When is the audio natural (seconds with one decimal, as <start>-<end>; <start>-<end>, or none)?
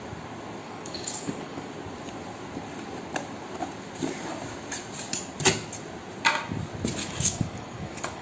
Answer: 0.0-0.6; 1.7-7.0